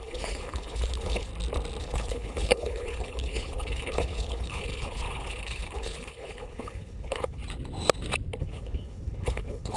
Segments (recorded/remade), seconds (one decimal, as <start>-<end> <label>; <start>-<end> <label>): 0.0-1.3 remade; 1.3-1.8 recorded; 1.8-7.4 remade; 7.4-8.4 recorded; 8.4-9.8 remade